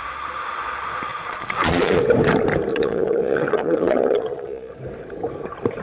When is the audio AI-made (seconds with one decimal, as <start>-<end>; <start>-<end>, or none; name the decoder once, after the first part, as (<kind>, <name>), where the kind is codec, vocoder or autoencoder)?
1.1-2.0 (vocoder, Vocos); 2.7-4.7